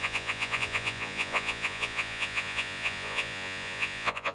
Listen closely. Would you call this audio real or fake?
fake